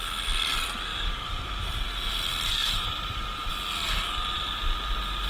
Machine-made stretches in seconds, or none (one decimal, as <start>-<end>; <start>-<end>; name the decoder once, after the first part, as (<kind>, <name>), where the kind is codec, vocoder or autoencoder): 0.9-1.5 (vocoder, BigVGAN v2); 2.6-3.5